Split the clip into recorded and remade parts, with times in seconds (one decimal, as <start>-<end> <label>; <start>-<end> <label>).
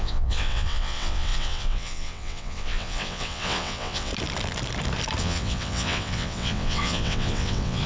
0.0-4.1 remade; 4.1-5.2 recorded; 5.2-7.9 remade